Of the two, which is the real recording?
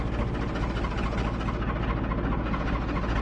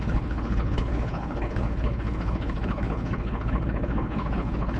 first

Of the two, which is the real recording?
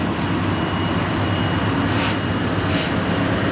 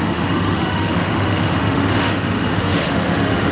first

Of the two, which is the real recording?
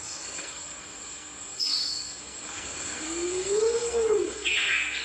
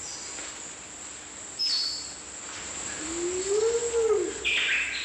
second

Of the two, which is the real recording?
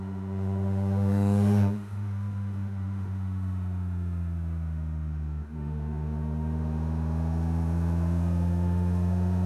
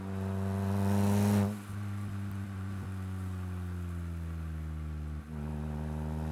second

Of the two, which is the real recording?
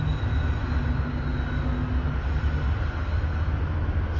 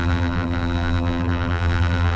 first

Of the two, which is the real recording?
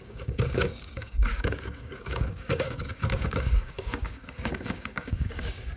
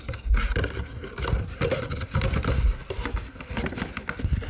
second